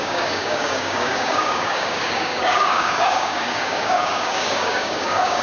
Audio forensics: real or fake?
fake